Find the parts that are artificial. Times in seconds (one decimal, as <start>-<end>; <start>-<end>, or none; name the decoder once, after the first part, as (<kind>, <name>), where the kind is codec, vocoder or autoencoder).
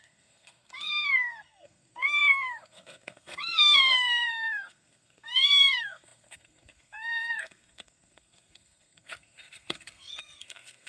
0.0-10.9 (codec, SNAC)